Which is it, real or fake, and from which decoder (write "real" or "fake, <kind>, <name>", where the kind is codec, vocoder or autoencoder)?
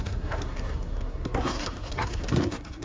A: fake, codec, SNAC